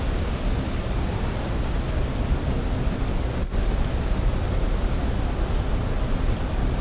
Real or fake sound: real